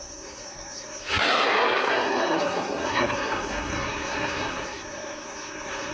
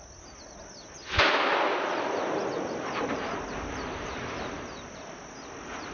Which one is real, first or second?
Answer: second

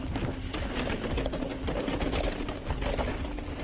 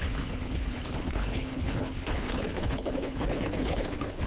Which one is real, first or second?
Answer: first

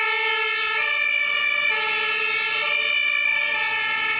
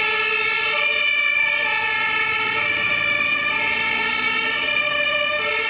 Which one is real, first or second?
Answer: first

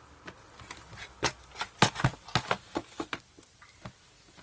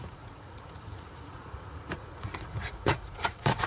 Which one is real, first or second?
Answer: first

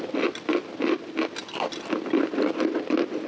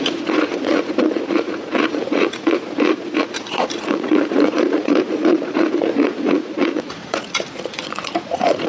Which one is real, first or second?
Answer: first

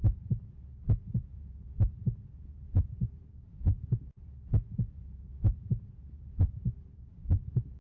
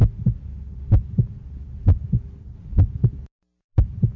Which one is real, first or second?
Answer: second